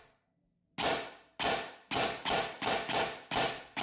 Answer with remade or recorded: recorded